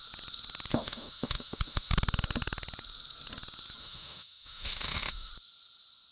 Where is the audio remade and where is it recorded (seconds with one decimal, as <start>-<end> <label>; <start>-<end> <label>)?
0.0-0.7 recorded; 0.7-1.9 remade; 1.9-3.8 recorded; 3.8-5.3 remade; 5.3-6.1 recorded